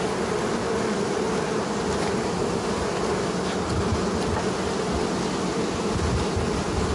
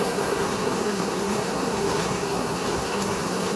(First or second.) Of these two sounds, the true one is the first